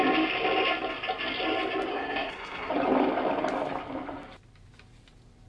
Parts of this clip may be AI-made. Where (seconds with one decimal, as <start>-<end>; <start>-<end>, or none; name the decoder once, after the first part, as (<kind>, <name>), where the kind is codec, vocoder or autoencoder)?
1.9-2.7 (codec, SNAC)

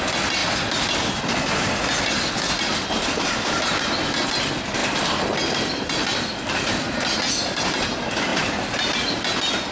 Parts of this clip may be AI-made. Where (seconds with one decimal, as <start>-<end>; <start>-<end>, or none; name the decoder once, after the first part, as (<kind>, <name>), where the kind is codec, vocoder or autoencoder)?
none

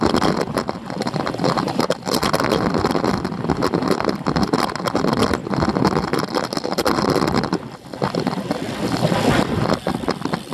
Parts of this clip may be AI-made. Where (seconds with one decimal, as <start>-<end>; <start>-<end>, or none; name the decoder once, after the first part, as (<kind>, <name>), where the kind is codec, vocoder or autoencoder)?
none

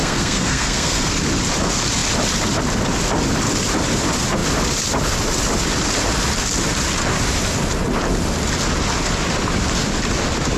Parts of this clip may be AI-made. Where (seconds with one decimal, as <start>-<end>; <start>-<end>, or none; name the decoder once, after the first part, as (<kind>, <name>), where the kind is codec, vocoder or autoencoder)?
0.0-1.1 (codec, SNAC)

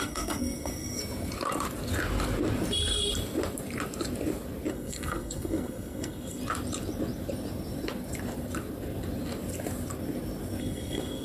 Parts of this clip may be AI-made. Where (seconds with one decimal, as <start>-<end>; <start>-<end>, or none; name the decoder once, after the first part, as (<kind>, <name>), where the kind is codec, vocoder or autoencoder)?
0.0-1.0 (codec, SNAC); 4.7-6.4; 10.6-11.2

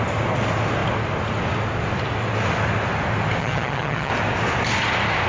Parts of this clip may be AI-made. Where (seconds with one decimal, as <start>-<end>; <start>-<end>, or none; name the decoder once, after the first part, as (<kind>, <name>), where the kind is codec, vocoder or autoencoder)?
3.4-4.1 (vocoder, HiFi-GAN)

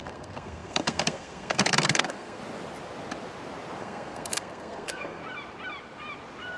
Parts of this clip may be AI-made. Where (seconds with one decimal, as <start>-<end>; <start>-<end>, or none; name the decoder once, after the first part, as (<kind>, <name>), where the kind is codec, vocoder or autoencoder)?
0.0-2.4 (codec, SNAC); 3.8-5.2